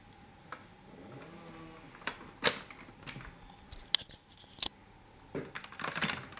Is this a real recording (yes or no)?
yes